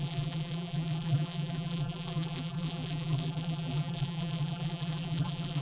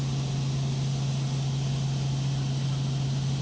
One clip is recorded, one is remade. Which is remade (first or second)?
first